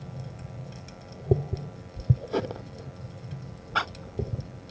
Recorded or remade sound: recorded